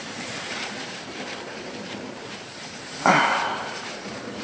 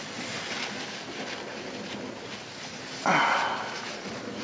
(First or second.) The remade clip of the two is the first